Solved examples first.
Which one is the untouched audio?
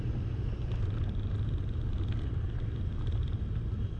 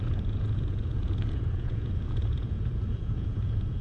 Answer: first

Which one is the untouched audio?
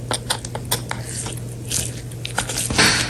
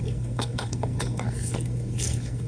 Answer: first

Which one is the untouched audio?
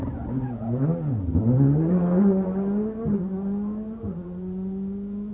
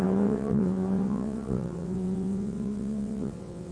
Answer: first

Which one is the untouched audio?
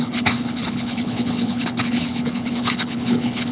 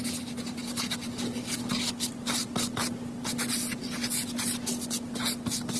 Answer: second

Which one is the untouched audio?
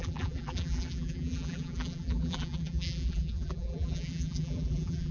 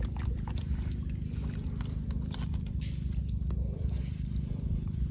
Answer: second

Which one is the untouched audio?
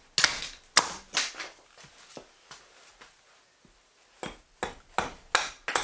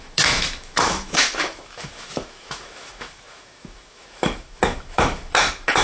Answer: first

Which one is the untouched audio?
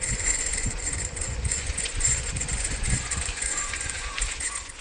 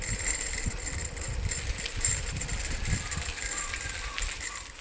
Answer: second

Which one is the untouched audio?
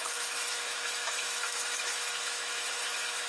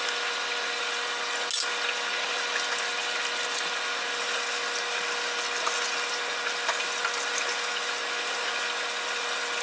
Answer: second